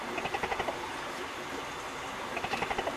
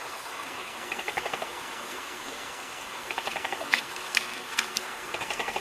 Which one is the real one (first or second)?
first